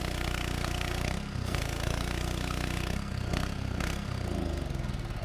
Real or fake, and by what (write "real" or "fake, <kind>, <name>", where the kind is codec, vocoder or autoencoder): fake, codec, SNAC